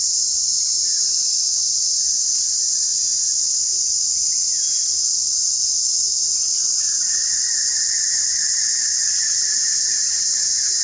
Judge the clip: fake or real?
real